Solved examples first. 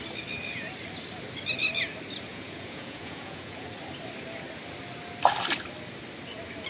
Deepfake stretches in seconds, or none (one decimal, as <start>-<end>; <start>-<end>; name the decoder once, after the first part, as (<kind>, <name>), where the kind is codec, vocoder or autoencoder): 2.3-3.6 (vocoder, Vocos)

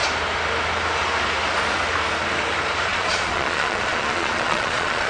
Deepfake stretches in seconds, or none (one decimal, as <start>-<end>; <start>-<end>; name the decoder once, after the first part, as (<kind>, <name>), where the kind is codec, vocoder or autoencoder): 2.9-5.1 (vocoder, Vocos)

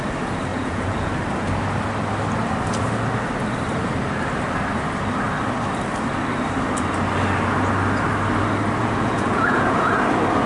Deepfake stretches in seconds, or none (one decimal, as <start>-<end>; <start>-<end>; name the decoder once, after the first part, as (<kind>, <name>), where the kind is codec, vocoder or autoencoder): 0.5-1.1 (vocoder, Vocos); 8.8-9.9